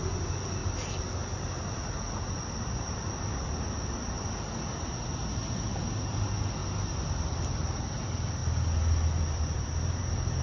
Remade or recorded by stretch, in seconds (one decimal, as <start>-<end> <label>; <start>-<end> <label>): 0.0-10.4 recorded